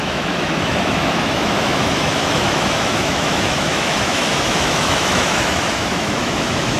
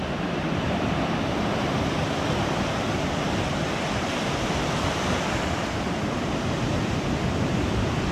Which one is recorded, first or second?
second